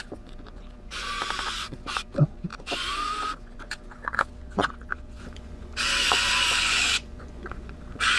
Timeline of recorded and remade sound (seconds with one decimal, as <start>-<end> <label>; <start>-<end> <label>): 0.0-8.2 remade